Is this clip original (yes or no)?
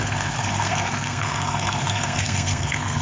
no